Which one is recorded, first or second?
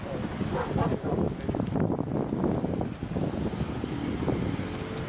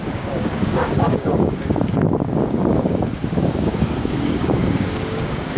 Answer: first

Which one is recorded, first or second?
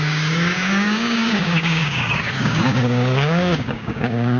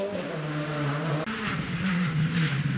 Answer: second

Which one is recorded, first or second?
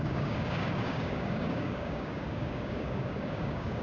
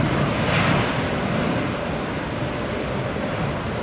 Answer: second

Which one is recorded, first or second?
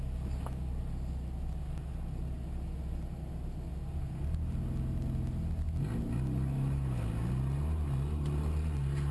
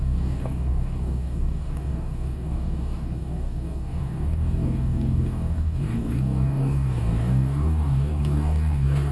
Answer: first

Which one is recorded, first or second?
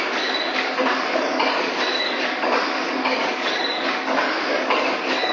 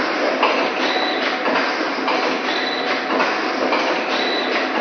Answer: second